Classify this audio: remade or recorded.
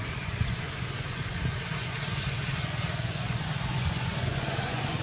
remade